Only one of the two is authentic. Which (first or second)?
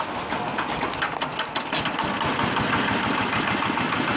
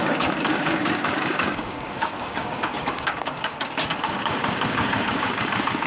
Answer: first